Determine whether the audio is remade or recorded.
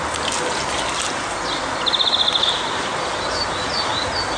recorded